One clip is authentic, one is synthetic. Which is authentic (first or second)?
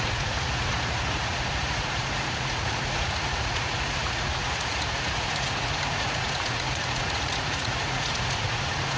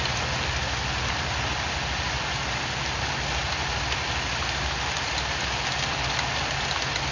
second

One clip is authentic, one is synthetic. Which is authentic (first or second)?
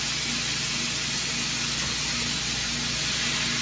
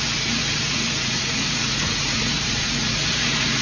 first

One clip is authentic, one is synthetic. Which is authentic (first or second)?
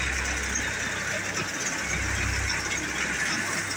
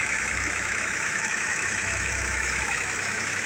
first